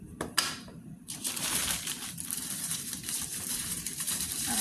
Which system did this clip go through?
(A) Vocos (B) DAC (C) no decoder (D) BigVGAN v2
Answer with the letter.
D